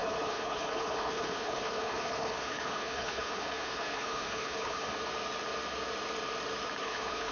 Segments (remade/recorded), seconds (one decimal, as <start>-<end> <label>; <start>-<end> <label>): 0.0-4.9 remade; 4.9-6.8 recorded; 6.8-7.3 remade